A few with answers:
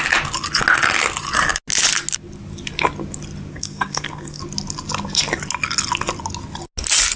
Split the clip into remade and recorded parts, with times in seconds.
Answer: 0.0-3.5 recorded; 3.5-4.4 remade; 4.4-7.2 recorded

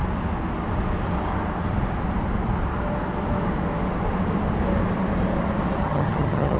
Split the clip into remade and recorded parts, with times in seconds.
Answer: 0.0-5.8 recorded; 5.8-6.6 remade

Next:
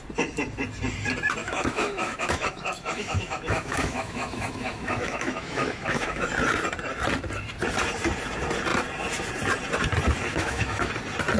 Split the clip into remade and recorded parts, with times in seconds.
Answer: 0.0-1.4 recorded; 1.4-6.3 remade; 6.3-10.3 recorded; 10.3-10.9 remade; 10.9-11.4 recorded

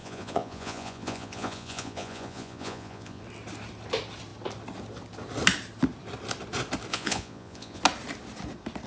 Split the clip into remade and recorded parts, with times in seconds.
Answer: 0.0-3.2 remade; 3.2-6.9 recorded; 6.9-7.8 remade; 7.8-8.9 recorded